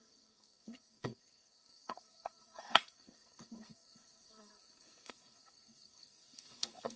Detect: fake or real fake